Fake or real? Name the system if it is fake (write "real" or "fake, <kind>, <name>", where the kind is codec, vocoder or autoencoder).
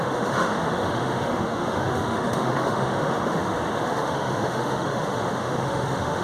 fake, autoencoder, DAC-VAE